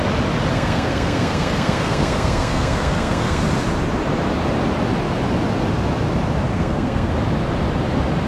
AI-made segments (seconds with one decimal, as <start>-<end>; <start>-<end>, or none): 0.5-3.4; 6.5-7.1